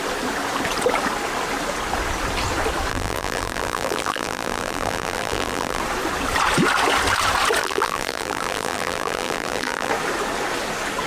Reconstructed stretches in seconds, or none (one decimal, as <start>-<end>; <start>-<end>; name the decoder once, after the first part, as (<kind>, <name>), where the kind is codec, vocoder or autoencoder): 2.9-5.8 (vocoder, BigVGAN v2); 7.6-9.9